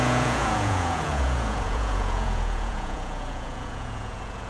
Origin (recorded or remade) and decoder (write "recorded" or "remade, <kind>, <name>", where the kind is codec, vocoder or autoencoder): remade, vocoder, Vocos